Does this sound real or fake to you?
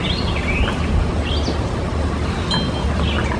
real